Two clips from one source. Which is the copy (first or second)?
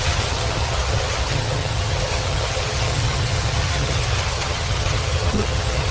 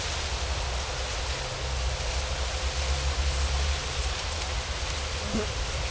first